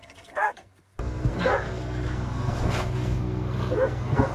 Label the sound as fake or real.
fake